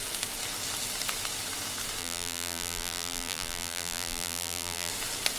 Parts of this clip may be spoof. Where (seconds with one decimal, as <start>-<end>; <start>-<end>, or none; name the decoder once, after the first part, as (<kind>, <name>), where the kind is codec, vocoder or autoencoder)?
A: 2.0-4.9 (vocoder, BigVGAN v2)